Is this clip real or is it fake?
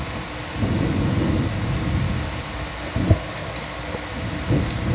real